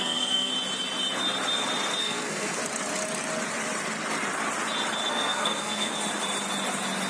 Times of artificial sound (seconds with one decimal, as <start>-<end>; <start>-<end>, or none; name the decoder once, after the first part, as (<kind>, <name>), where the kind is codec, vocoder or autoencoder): 0.0-0.5 (codec, SNAC); 2.0-2.6; 5.1-5.9